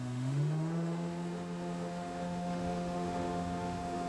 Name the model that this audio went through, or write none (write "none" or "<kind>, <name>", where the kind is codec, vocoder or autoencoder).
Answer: autoencoder, DAC-VAE